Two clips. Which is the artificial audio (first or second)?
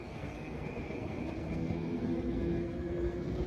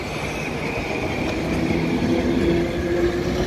first